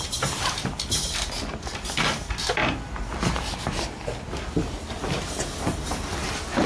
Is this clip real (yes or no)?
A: yes